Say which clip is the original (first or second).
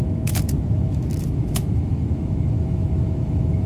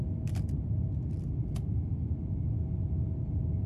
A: second